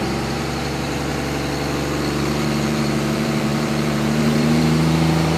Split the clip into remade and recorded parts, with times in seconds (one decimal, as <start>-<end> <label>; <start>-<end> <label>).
0.0-1.1 remade; 1.1-2.2 recorded; 2.2-5.4 remade